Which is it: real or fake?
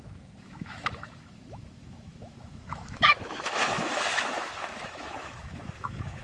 fake